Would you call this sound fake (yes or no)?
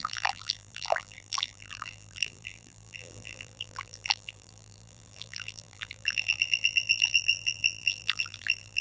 yes